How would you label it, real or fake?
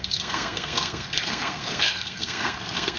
fake